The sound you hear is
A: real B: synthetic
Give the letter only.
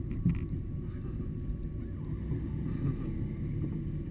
A